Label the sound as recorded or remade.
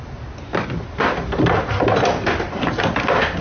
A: recorded